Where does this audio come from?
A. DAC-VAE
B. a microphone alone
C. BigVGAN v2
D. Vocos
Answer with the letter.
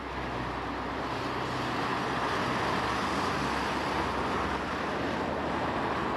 B